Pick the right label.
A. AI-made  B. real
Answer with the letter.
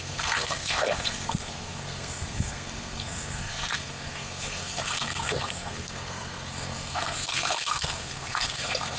A